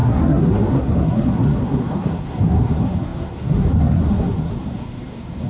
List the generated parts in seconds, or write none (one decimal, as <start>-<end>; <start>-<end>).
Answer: 0.0-5.5